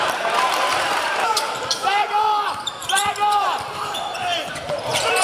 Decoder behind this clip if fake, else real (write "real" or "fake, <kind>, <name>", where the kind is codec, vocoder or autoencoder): fake, vocoder, BigVGAN v2